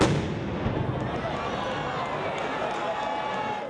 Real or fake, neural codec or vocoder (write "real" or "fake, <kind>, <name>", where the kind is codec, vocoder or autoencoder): real